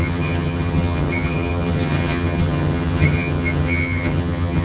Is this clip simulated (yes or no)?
yes